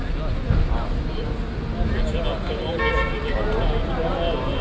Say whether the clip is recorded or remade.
recorded